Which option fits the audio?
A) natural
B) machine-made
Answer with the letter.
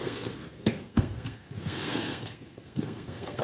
B